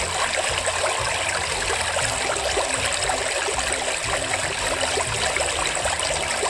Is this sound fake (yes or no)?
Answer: no